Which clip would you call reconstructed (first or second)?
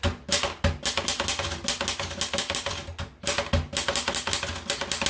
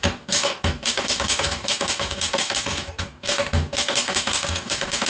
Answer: second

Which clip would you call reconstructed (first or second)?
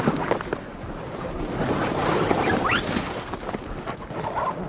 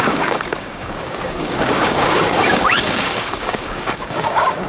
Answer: second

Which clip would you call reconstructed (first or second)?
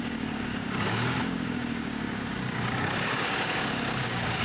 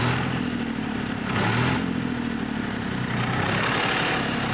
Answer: first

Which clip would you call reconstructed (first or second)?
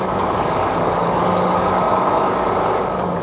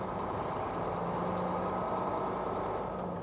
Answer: first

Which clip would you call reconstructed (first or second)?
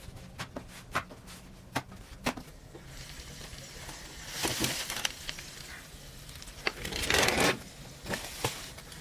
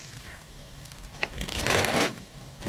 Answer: second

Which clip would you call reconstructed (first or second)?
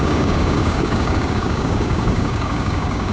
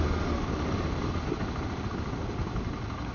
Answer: first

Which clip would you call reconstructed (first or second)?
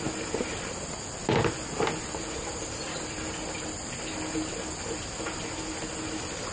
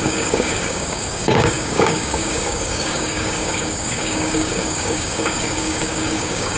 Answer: second